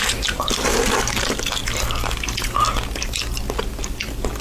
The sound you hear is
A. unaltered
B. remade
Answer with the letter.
A